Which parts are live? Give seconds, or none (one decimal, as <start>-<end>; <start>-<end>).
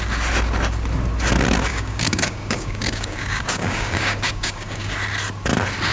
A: 0.0-1.7; 4.9-5.9